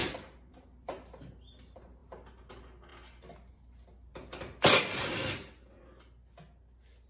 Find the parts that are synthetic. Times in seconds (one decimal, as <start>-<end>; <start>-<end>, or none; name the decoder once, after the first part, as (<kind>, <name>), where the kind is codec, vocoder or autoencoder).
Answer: 0.0-0.9 (vocoder, BigVGAN v2)